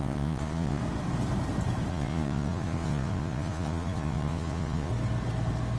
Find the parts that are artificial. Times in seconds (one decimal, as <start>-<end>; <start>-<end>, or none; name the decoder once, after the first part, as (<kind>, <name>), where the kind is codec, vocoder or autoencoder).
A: 0.0-0.8 (vocoder, Vocos); 1.9-4.9